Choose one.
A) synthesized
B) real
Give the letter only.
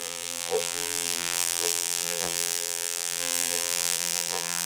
A